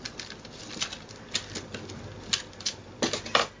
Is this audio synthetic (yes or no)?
no